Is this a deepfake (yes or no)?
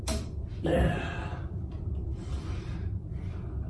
yes